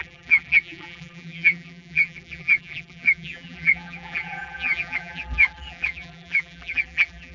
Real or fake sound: fake